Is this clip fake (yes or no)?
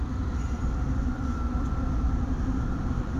yes